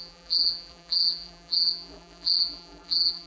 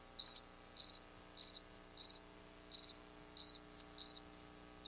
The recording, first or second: second